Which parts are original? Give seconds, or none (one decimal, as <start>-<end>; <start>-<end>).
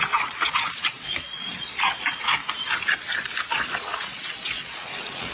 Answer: 2.4-3.5